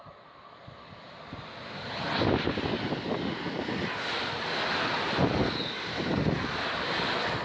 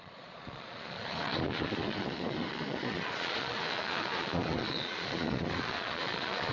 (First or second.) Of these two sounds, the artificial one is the second